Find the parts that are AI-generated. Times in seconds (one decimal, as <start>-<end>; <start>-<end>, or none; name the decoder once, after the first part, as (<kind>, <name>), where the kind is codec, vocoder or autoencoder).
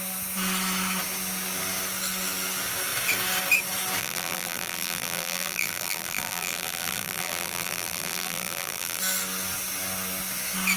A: 4.0-9.0 (vocoder, BigVGAN v2)